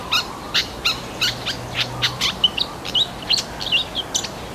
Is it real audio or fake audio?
real